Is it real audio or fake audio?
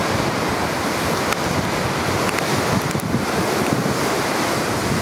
real